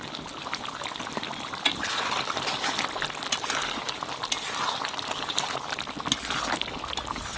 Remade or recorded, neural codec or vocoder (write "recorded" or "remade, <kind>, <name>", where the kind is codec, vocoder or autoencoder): recorded